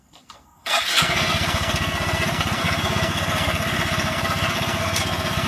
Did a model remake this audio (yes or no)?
yes